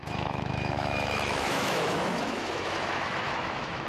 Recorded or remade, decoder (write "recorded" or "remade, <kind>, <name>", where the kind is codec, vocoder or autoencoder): remade, autoencoder, DAC-VAE